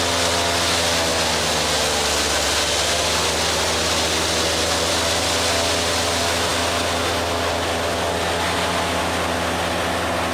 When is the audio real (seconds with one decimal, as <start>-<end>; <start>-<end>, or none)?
0.0-10.3